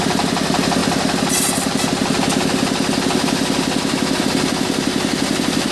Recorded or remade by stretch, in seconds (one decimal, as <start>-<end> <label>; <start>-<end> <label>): 0.0-5.7 recorded